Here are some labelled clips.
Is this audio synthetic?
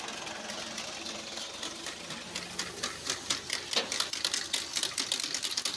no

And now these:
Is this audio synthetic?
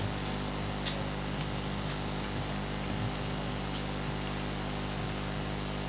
no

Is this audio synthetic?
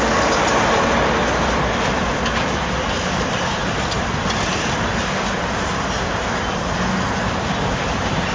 no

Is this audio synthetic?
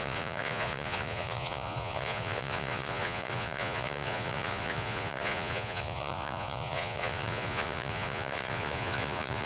yes